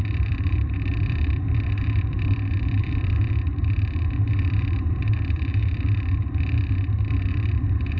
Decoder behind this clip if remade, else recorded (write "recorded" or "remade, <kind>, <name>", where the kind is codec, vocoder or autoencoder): remade, vocoder, BigVGAN v2